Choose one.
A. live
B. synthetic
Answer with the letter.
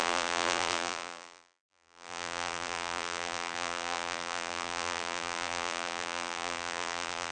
B